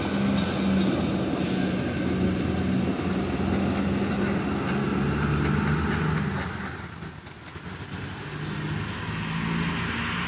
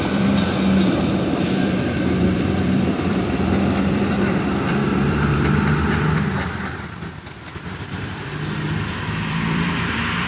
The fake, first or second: second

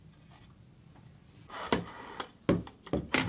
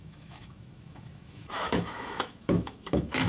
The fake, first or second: second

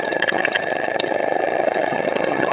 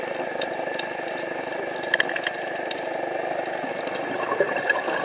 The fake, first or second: first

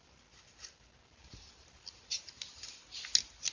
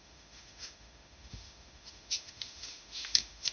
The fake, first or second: second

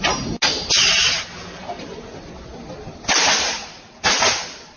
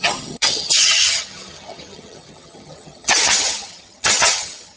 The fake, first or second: second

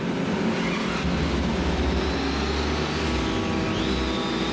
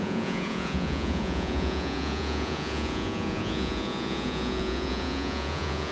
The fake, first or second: second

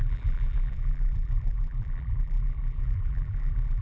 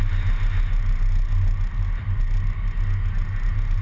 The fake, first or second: first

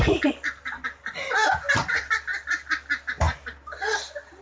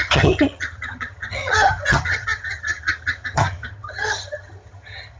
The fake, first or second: second